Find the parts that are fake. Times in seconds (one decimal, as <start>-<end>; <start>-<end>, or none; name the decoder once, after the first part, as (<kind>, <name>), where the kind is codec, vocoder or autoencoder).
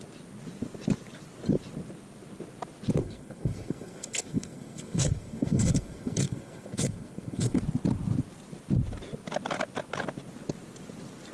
3.0-7.6 (codec, SNAC)